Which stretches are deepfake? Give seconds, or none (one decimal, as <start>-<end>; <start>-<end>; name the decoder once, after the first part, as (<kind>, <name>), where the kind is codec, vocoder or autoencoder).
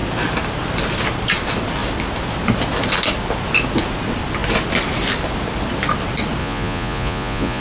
6.4-7.6 (vocoder, Vocos)